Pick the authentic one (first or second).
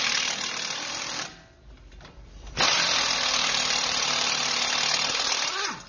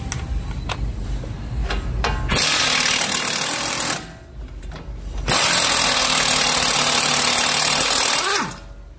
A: second